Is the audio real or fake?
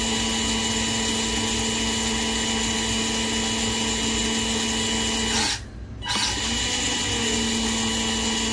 real